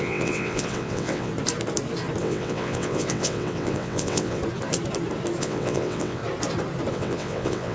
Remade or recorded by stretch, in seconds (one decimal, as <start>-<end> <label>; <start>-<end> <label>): 0.0-1.3 remade; 1.3-2.2 recorded; 2.2-4.4 remade; 4.4-5.4 recorded; 5.4-6.2 remade; 6.2-6.9 recorded; 6.9-7.7 remade